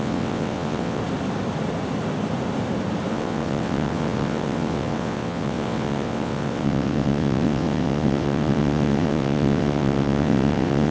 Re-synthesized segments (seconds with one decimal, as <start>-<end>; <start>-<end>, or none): 0.0-1.0; 3.1-10.9